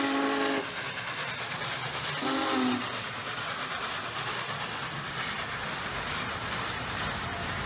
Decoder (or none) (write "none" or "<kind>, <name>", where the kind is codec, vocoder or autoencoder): none